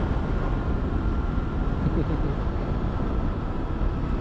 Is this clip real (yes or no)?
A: yes